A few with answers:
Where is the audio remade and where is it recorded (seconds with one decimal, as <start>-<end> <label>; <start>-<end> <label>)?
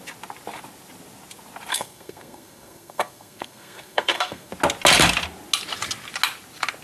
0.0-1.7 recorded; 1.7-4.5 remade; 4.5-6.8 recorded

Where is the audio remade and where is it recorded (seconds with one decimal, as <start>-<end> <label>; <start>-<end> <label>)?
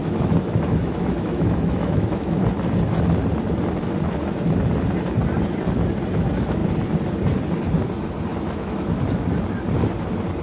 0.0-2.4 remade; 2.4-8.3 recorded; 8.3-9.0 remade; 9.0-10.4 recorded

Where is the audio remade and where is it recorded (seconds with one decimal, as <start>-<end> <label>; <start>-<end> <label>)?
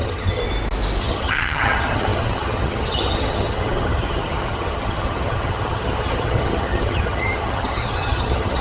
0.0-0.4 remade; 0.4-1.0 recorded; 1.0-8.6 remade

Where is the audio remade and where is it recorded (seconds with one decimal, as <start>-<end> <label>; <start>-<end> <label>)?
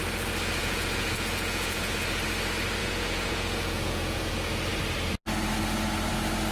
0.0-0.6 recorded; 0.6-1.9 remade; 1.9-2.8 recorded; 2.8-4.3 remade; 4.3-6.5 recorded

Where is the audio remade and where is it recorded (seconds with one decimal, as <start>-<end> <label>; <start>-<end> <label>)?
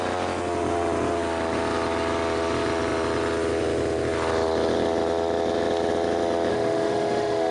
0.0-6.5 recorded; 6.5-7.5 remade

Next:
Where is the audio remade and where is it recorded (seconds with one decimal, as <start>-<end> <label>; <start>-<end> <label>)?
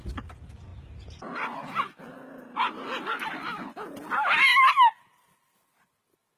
0.0-6.4 recorded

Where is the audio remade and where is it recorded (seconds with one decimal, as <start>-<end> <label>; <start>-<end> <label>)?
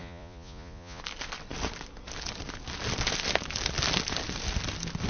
0.0-1.0 remade; 1.0-5.1 recorded